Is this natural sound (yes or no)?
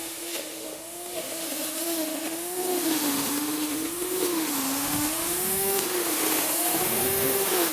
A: no